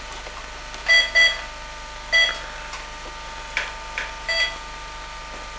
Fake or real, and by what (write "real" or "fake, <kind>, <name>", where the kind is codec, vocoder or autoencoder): real